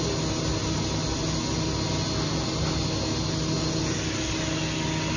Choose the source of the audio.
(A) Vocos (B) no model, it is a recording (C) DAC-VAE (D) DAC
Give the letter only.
B